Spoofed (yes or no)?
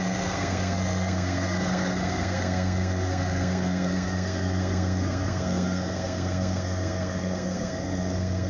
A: yes